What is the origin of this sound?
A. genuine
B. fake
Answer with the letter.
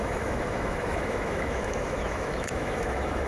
B